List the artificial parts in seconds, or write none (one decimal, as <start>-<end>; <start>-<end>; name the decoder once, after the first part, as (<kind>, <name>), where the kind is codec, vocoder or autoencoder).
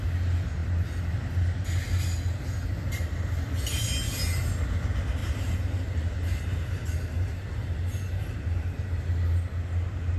5.2-9.0 (vocoder, BigVGAN v2)